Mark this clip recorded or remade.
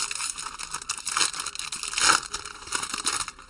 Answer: recorded